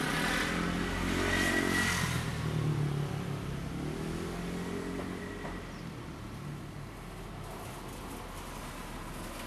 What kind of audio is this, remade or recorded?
recorded